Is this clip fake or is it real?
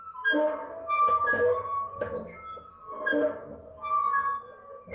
real